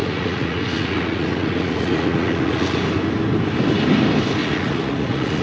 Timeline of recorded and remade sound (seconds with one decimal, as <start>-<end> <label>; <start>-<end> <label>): 0.0-2.8 remade; 2.8-4.4 recorded; 4.4-5.4 remade